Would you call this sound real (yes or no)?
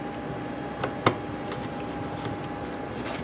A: yes